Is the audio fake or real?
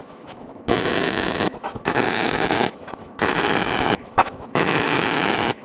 fake